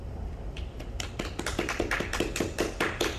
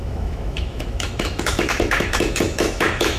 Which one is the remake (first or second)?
second